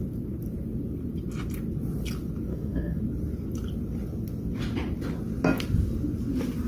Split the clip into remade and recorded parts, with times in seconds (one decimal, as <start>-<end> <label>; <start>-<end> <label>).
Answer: 0.0-2.5 recorded; 2.5-3.0 remade; 3.0-6.7 recorded